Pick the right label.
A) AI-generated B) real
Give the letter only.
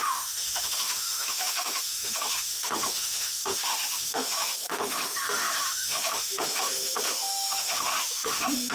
A